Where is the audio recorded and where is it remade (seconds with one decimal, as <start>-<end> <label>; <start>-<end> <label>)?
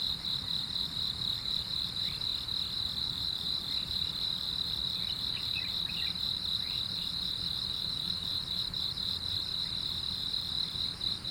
0.0-2.3 remade; 2.3-3.0 recorded; 3.0-11.3 remade